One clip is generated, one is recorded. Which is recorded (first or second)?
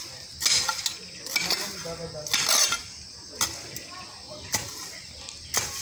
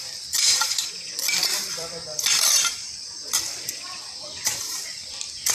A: first